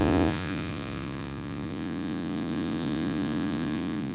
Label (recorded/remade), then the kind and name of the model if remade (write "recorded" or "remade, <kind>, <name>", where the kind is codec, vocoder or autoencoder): remade, vocoder, Vocos